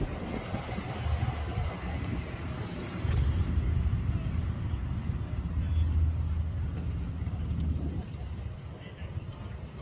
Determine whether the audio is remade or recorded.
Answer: recorded